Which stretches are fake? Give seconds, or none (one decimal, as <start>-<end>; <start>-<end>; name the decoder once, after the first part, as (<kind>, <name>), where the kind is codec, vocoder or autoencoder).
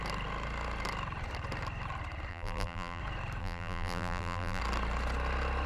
2.3-3.0 (vocoder, BigVGAN v2); 3.4-4.6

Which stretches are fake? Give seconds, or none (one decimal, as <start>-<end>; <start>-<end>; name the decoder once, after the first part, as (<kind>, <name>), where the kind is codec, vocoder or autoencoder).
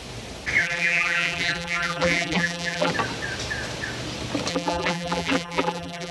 0.6-2.9 (vocoder, BigVGAN v2); 4.5-6.1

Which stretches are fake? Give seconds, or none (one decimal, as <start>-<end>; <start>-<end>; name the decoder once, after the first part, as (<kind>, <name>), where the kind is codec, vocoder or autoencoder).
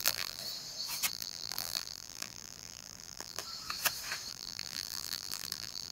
0.0-0.4 (vocoder, BigVGAN v2); 1.1-3.4; 4.3-5.9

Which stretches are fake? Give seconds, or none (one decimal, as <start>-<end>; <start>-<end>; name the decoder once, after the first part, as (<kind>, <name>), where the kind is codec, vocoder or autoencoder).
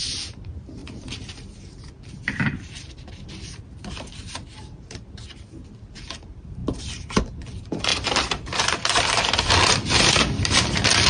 0.0-11.1 (vocoder, BigVGAN v2)